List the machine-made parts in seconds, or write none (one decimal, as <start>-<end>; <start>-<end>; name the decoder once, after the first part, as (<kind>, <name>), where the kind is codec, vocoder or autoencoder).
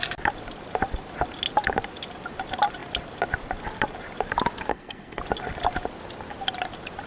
4.7-5.2 (codec, SNAC)